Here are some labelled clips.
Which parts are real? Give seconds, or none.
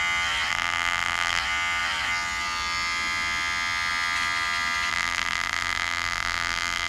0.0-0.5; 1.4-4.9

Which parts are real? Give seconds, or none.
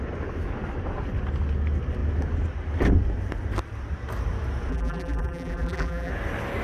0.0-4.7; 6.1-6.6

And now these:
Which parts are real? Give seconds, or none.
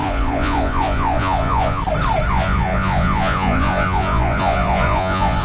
1.8-2.3